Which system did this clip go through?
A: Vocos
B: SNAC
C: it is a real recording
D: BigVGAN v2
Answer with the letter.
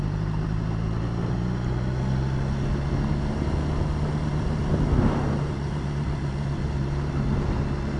C